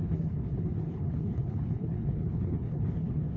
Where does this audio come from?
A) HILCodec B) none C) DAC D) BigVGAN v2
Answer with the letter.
A